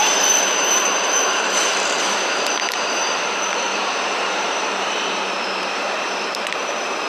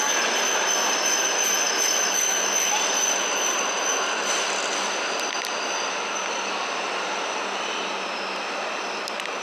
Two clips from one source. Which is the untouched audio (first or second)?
second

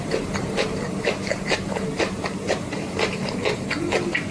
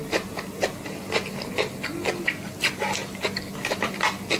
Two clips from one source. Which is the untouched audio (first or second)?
second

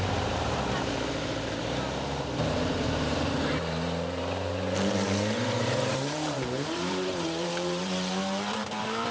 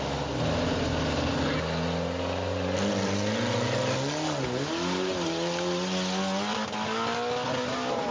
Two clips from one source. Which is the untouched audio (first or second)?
second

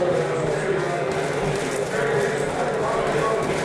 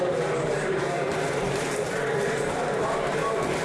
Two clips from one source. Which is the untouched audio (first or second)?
first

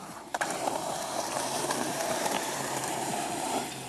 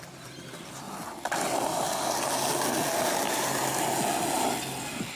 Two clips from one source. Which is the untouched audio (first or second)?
second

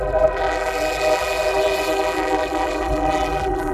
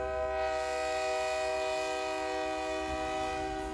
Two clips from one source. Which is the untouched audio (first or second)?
second